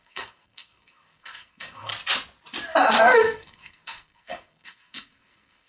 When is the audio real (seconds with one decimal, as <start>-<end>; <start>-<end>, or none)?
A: 1.9-3.0